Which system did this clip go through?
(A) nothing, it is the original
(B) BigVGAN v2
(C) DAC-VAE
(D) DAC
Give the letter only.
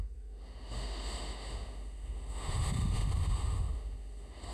C